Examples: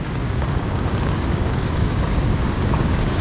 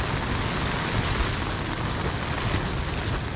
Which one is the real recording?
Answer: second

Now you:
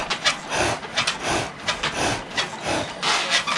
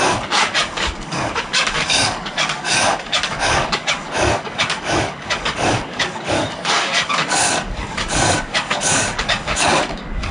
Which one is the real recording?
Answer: first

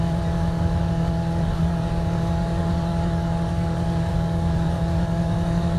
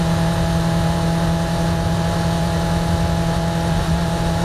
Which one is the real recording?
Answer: second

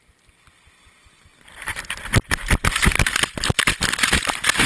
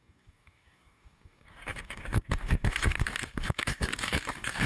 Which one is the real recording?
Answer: first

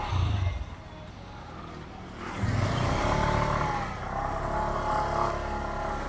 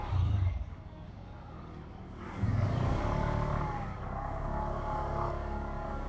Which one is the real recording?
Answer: first